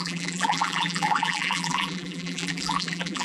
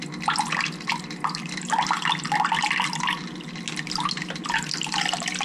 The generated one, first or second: first